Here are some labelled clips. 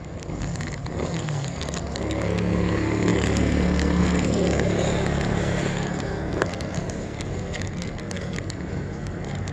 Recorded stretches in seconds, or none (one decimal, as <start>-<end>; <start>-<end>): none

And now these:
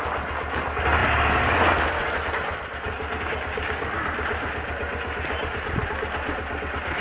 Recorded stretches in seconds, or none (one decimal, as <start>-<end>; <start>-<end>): 0.0-7.0

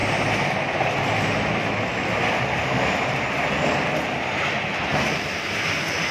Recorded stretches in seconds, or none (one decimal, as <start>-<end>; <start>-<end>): 0.0-4.9